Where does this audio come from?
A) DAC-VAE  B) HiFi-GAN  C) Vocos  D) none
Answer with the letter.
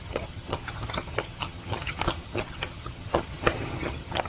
B